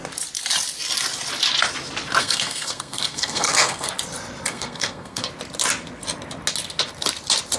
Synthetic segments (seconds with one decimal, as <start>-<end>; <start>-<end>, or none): 2.2-3.9; 4.5-5.3